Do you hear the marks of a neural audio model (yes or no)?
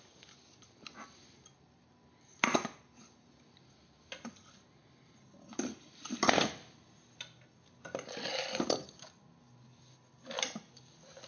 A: no